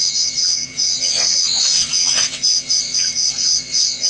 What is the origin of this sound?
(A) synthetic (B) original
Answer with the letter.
A